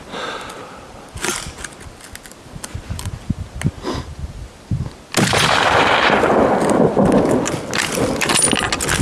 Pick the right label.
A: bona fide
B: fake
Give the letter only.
A